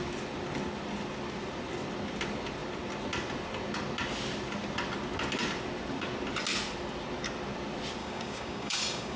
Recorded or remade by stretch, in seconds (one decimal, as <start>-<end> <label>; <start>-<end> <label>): 0.0-8.0 recorded; 8.0-9.2 remade